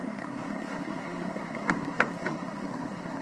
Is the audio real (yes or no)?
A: no